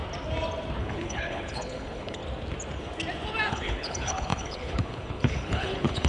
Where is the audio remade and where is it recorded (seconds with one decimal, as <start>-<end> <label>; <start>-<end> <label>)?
0.0-0.8 recorded; 0.8-2.2 remade; 2.2-3.5 recorded; 3.5-6.1 remade